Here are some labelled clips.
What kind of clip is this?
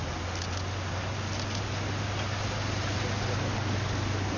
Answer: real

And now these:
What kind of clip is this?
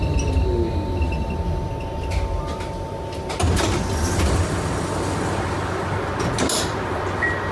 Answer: real